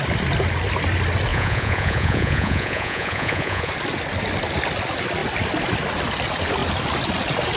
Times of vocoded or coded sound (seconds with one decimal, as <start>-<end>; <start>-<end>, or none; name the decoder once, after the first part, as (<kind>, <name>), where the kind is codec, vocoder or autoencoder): 1.3-3.7 (vocoder, Vocos)